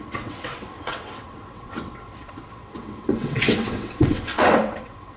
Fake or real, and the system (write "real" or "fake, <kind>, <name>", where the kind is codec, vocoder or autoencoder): fake, vocoder, WaveNeXt